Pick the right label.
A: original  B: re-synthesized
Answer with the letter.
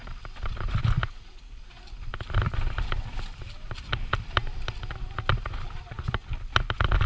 A